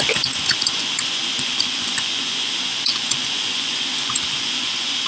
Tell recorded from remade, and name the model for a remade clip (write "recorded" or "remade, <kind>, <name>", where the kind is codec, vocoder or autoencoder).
remade, vocoder, Vocos